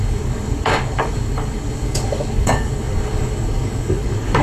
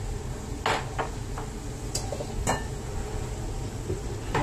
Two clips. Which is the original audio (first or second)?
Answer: second